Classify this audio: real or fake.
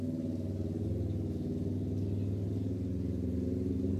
real